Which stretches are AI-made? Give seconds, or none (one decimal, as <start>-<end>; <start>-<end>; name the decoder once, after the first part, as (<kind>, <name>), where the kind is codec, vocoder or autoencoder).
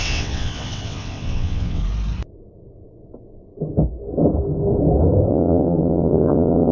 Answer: 0.0-1.8 (vocoder, WaveNeXt); 5.3-6.7